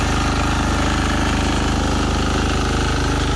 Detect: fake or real real